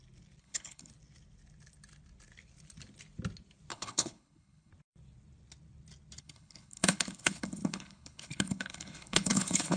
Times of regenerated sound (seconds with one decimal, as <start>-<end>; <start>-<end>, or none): 0.4-0.9; 3.7-4.7; 6.2-9.8